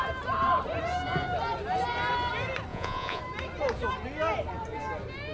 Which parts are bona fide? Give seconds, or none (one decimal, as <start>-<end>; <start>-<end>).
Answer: 0.0-2.7; 3.2-5.3